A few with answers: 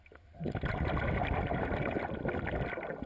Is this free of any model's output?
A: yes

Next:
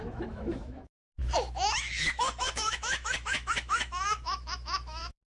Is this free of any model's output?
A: no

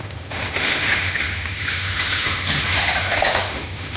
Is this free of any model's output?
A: no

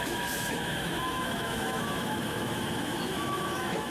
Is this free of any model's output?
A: no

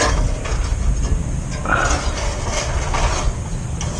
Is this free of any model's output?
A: yes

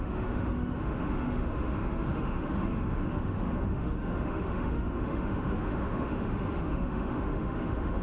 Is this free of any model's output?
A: no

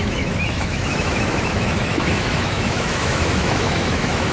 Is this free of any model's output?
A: no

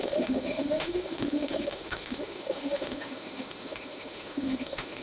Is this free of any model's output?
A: no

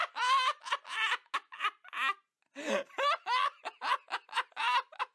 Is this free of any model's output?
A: yes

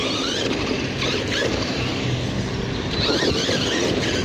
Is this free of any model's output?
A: yes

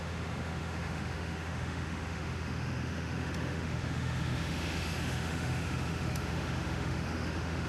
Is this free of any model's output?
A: no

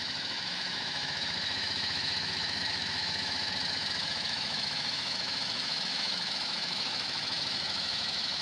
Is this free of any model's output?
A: no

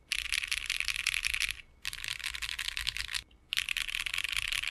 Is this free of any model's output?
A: yes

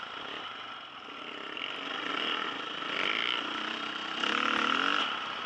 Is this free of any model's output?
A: yes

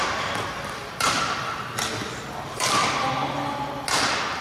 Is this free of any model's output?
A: yes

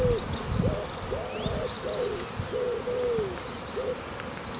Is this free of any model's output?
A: yes